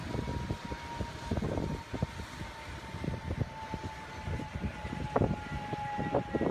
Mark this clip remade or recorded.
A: recorded